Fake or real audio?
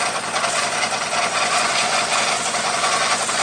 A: fake